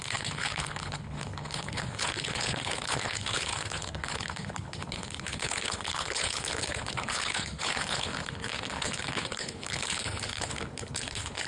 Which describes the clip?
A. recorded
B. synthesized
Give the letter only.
B